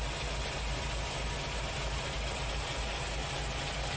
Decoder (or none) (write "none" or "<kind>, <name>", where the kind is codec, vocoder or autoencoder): none